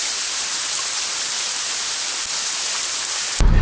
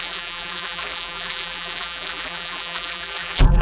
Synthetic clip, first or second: second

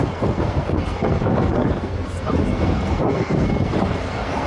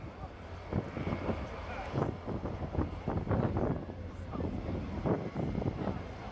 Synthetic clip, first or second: first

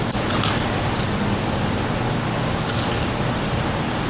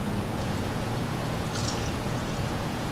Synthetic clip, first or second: second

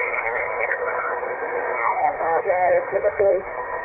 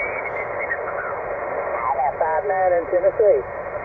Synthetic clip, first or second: first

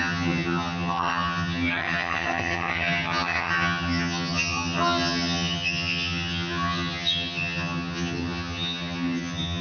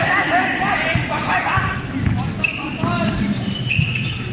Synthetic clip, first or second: first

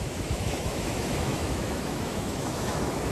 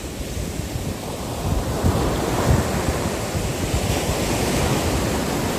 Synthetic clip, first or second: first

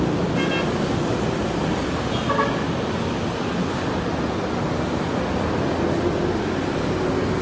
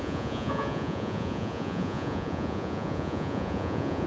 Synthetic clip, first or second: second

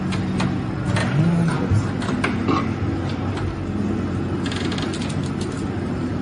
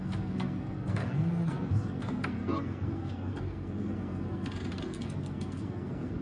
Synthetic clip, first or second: second